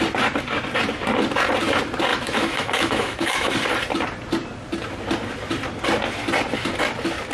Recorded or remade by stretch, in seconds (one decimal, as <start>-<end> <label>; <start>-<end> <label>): 0.0-2.1 recorded; 2.1-3.5 remade; 3.5-7.3 recorded